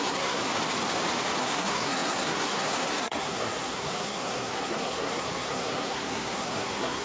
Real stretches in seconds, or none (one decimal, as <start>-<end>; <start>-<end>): 0.4-1.4